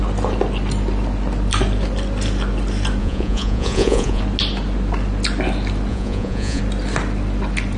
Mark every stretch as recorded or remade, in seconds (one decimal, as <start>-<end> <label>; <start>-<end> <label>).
0.0-3.0 recorded; 3.0-4.2 remade; 4.2-5.9 recorded; 5.9-6.6 remade; 6.6-7.8 recorded